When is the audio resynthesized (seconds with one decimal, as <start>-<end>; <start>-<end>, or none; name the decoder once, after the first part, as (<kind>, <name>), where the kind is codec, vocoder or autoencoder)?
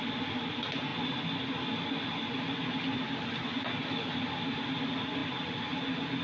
none